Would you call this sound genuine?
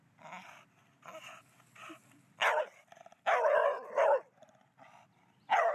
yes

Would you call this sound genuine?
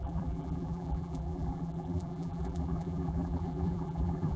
no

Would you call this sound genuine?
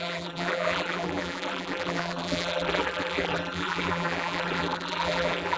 no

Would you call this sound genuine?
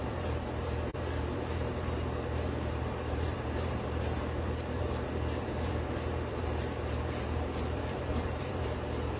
no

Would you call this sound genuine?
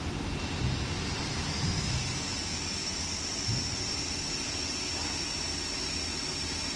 yes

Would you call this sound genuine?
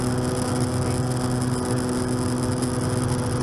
yes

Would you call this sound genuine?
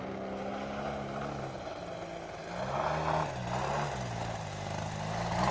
yes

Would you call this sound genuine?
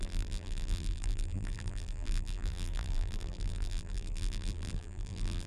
no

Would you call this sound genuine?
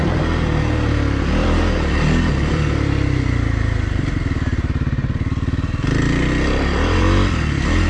no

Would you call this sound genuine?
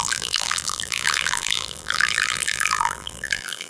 no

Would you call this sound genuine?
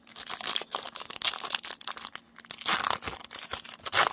yes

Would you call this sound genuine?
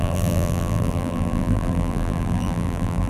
no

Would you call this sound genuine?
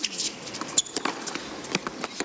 yes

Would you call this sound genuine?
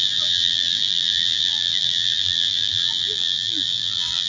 no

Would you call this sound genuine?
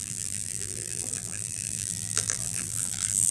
no